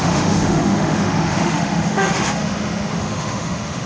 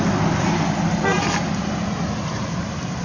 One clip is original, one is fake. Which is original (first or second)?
second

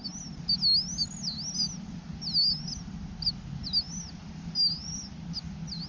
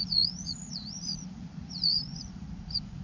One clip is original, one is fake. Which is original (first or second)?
first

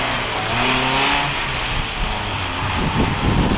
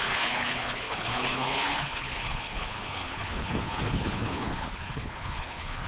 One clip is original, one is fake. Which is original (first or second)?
first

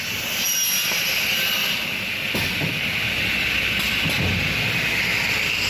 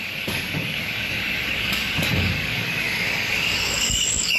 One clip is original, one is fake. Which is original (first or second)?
first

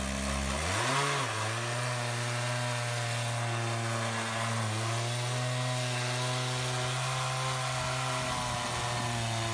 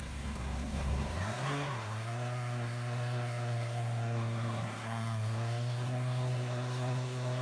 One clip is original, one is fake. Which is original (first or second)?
first